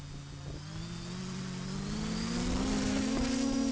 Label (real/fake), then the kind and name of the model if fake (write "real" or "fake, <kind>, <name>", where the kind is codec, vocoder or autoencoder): real